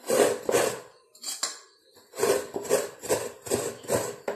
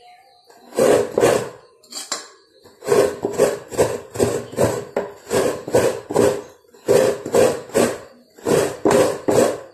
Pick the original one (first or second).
second